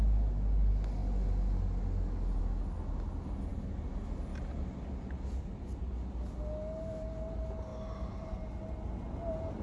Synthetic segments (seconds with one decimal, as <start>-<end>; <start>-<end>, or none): none